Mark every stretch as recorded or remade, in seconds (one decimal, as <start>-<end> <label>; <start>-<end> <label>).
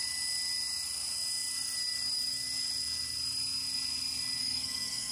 0.0-4.4 recorded; 4.4-5.1 remade